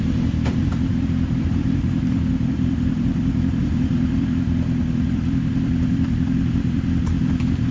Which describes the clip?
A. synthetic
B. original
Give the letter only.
A